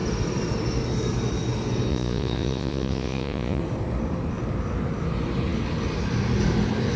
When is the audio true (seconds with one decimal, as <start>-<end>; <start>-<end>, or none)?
0.0-1.9; 3.6-7.0